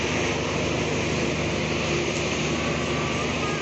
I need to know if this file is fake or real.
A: real